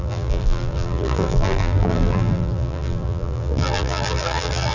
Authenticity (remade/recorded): remade